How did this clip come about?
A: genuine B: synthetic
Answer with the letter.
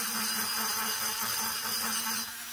A